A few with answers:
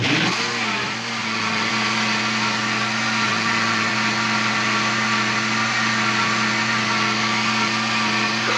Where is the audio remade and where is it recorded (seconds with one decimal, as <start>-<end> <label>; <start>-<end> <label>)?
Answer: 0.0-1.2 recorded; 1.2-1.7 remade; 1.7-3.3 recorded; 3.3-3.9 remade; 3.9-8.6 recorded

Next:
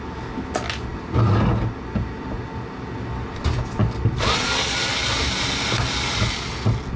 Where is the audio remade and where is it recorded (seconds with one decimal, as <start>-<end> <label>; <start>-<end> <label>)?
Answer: 0.0-7.0 recorded

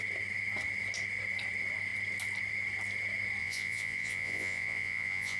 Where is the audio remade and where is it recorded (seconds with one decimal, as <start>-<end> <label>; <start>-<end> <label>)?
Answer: 0.0-3.4 recorded; 3.4-5.4 remade

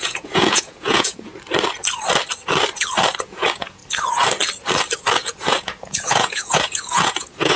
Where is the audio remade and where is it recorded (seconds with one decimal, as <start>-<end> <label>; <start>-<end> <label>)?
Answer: 0.0-1.3 remade; 1.3-3.2 recorded; 3.2-3.8 remade; 3.8-5.2 recorded; 5.2-7.6 remade